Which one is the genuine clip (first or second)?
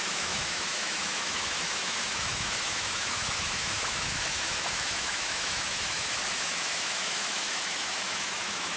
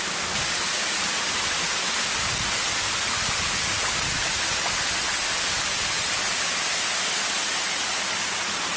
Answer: second